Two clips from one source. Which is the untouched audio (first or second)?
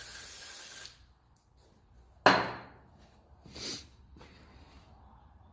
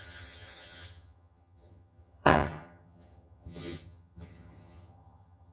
first